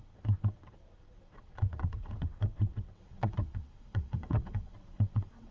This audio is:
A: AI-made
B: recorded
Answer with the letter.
A